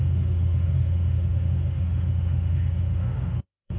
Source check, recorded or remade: remade